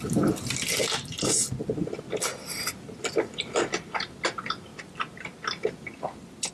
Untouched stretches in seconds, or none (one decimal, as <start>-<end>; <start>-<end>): 0.0-6.5